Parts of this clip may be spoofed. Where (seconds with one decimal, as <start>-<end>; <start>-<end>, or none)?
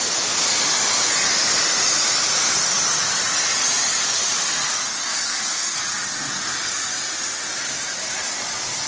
5.2-5.8